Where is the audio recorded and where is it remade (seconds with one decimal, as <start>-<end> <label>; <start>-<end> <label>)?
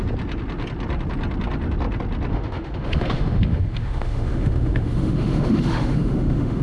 0.0-2.3 recorded; 2.3-6.6 remade